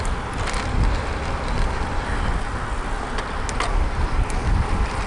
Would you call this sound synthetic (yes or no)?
no